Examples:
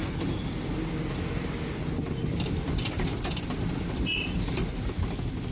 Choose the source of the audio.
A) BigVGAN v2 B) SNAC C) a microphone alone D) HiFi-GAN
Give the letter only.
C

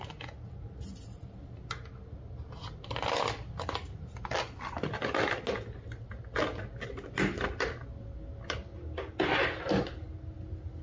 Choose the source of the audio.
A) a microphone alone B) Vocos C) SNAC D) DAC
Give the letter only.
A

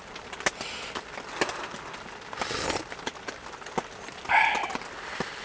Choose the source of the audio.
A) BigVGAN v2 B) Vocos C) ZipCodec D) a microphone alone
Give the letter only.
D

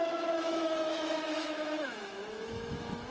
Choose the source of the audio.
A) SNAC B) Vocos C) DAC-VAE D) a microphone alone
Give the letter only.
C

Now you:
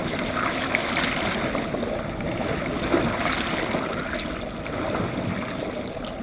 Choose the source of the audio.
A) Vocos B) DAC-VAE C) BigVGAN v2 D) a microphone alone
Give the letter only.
D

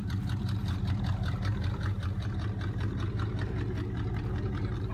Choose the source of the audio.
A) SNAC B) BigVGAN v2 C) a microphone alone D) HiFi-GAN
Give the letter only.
B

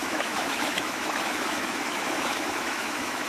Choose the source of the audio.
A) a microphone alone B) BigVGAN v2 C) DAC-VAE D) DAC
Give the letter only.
C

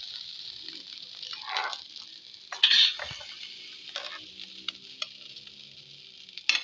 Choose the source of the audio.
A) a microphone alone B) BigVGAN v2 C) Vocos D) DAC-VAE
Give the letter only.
A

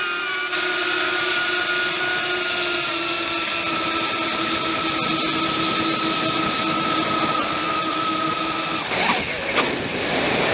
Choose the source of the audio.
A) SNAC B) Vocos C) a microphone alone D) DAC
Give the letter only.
C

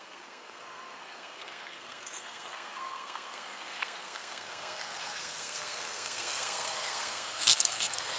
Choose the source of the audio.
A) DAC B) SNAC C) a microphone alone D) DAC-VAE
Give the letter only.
B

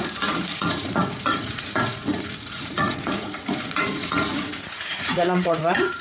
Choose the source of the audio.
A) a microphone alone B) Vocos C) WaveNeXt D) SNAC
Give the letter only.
B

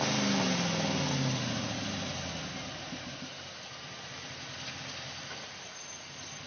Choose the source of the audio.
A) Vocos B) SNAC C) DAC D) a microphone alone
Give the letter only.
D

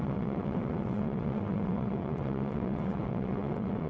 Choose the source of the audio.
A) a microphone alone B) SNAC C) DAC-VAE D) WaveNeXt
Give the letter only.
D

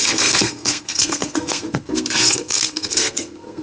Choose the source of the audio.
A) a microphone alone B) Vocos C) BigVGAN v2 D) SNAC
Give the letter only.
D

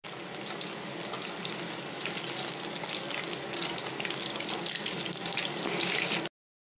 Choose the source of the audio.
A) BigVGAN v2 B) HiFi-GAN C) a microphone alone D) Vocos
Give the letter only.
C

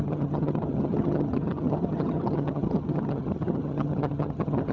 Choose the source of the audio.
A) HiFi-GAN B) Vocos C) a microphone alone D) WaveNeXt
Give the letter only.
A